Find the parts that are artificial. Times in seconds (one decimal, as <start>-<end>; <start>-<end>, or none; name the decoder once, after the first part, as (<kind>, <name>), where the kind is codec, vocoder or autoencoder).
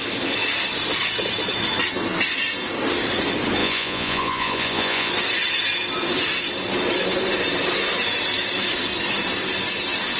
3.6-5.1 (vocoder, Vocos)